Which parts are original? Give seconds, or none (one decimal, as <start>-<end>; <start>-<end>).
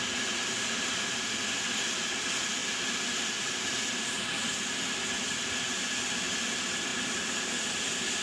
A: 0.0-8.2